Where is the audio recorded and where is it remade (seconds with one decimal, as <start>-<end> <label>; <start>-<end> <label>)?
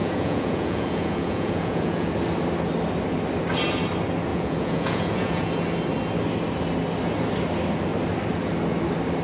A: 0.0-2.1 remade; 2.1-4.3 recorded; 4.3-5.5 remade; 5.5-9.2 recorded